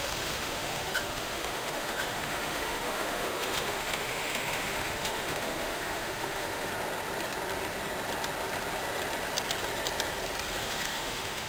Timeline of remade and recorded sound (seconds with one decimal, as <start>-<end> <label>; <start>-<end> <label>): 0.0-6.7 remade; 6.7-10.6 recorded; 10.6-11.5 remade